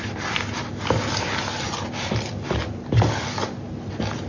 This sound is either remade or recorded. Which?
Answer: recorded